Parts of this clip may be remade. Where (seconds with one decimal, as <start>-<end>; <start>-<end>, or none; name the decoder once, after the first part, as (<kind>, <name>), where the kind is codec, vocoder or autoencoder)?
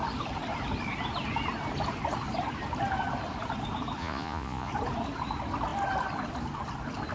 4.0-4.7 (vocoder, Vocos)